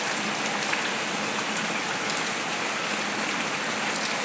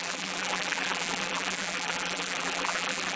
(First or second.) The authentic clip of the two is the first